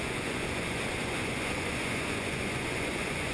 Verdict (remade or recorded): remade